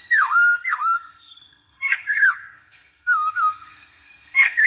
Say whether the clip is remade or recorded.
remade